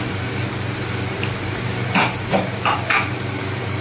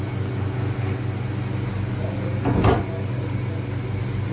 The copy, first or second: first